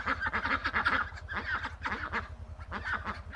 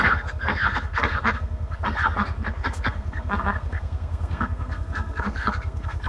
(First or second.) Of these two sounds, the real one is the first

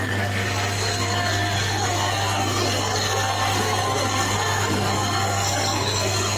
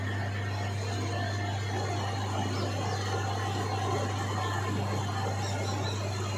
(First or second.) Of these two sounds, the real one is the second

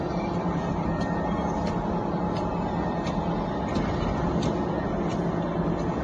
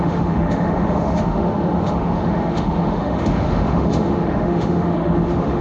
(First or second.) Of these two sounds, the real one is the first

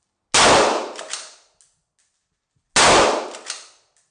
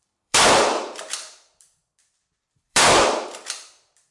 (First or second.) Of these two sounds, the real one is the first